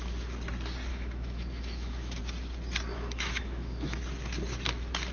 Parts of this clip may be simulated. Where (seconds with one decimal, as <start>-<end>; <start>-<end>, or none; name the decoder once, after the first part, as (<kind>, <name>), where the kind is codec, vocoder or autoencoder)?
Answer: 0.9-2.2 (autoencoder, DAC-VAE); 2.9-4.0